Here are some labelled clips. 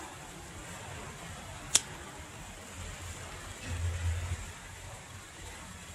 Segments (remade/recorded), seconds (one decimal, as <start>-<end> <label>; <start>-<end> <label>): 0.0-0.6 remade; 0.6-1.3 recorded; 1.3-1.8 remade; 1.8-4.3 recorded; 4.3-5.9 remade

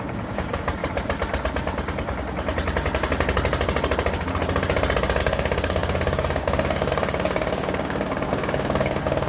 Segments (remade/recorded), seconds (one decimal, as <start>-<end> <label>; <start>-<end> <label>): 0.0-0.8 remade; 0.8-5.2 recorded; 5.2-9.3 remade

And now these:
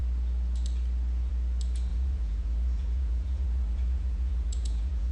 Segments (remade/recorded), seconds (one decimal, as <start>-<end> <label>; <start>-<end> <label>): 0.0-1.9 recorded; 1.9-5.1 remade

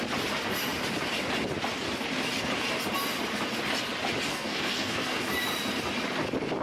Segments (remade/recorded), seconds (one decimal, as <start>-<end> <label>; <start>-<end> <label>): 0.0-4.3 recorded; 4.3-5.2 remade; 5.2-6.6 recorded

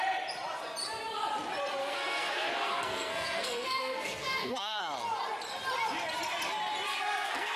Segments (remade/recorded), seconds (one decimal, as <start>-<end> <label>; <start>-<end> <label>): 0.0-1.8 recorded; 1.8-4.8 remade; 4.8-6.9 recorded; 6.9-7.6 remade

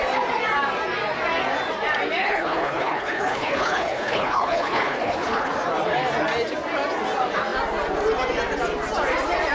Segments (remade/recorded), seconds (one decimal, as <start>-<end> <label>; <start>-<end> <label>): 0.0-2.2 recorded; 2.2-5.5 remade; 5.5-9.5 recorded

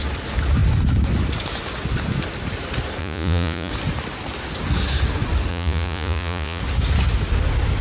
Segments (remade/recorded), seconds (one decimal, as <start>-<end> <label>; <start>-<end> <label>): 0.0-3.0 recorded; 3.0-3.7 remade; 3.7-5.5 recorded; 5.5-6.6 remade; 6.6-7.8 recorded